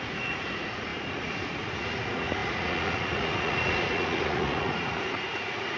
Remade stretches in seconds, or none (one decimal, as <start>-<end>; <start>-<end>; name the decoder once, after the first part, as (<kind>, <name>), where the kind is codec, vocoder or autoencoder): 0.0-5.8 (vocoder, Vocos)